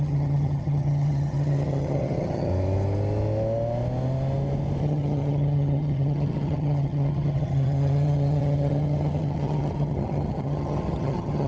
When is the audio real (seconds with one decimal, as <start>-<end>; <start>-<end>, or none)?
2.5-4.8